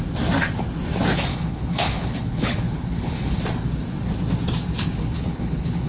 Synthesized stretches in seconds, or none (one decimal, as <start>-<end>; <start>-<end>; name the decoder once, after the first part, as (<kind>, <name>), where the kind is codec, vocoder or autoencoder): 1.3-3.4 (codec, HILCodec); 5.0-5.9